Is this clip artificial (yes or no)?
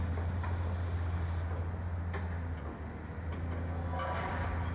no